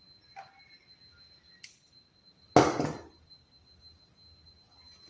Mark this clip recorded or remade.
recorded